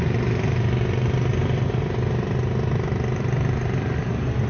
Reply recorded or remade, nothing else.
recorded